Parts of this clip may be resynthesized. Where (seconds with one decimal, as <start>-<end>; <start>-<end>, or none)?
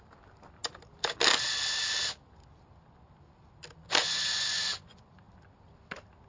4.0-5.1